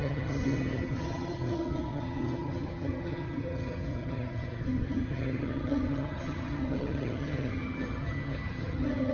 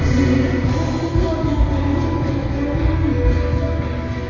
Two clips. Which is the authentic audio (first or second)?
second